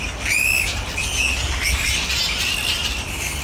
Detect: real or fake real